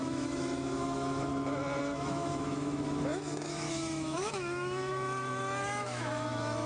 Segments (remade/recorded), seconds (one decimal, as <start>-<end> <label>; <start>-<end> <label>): 0.0-1.3 remade; 1.3-1.8 recorded; 1.8-6.7 remade